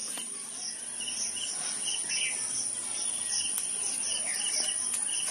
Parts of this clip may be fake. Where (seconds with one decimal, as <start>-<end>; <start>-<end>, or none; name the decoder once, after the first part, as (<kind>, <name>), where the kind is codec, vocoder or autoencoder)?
none